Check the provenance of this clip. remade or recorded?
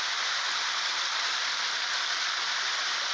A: remade